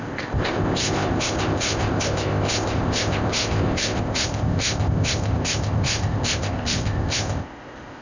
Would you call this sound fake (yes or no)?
yes